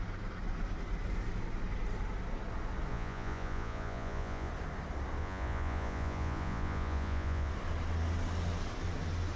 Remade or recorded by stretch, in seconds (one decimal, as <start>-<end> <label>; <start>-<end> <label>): 0.0-2.9 recorded; 2.9-4.5 remade; 4.5-5.2 recorded; 5.2-7.5 remade; 7.5-9.4 recorded